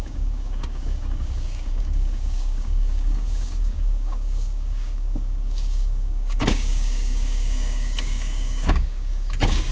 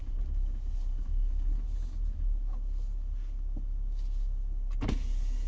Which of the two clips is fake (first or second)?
first